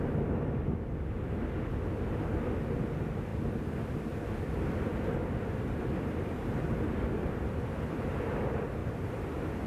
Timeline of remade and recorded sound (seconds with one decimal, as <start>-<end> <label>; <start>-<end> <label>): 0.0-3.3 recorded; 3.3-7.7 remade; 7.7-8.8 recorded; 8.8-9.7 remade